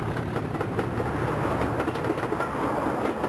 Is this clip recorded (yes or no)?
yes